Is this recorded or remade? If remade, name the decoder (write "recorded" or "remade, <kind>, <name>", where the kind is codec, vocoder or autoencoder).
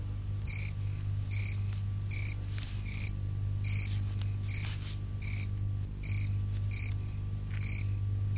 recorded